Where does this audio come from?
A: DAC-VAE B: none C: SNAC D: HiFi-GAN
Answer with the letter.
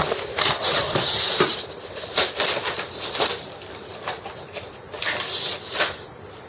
B